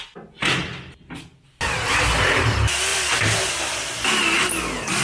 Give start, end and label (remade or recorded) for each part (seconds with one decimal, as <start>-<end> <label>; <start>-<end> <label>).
0.0-5.0 recorded